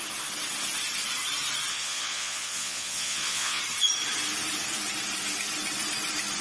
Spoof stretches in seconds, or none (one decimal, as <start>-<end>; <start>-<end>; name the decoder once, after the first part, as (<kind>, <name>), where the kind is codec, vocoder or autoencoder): 1.7-3.6 (vocoder, Vocos)